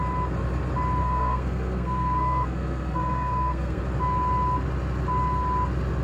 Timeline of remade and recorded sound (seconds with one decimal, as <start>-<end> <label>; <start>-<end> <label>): 0.0-1.0 recorded; 1.0-3.8 remade; 3.8-6.0 recorded